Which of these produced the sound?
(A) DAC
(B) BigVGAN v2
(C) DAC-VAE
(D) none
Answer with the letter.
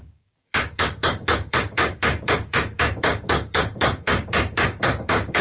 A